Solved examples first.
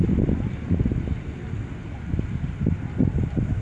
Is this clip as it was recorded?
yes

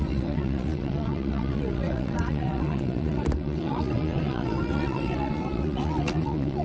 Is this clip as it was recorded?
no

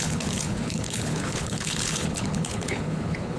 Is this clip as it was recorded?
no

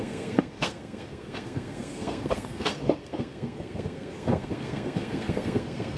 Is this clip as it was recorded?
no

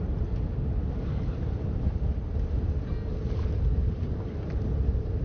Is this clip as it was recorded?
yes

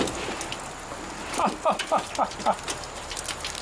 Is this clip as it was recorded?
yes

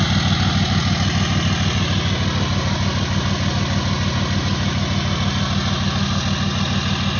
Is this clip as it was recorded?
yes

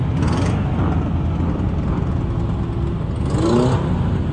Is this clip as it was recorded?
yes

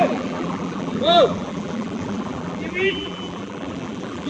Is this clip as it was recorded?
no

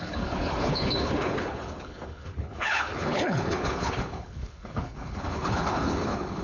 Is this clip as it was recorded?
no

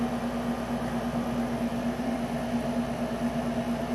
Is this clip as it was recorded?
yes